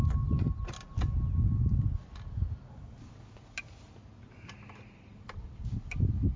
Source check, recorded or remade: recorded